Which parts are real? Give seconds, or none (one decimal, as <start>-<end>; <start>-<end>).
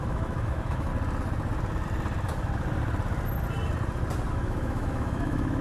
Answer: 0.9-4.3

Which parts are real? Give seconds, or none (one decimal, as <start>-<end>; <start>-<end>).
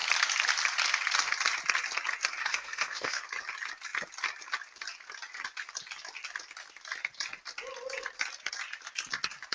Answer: 0.0-2.4; 3.2-9.5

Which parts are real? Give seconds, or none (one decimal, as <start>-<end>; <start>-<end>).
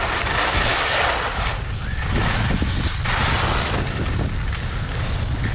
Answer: 0.0-5.5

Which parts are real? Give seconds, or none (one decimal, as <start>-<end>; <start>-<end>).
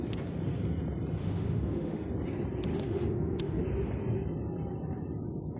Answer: 0.0-1.2; 2.0-2.7; 3.6-5.6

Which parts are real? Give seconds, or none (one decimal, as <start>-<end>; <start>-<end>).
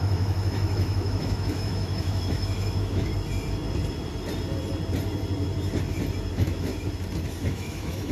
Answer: 3.1-6.3; 6.7-7.4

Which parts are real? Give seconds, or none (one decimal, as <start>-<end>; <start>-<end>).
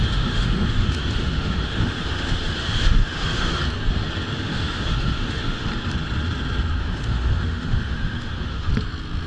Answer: 3.6-4.3; 5.7-6.8; 8.7-9.3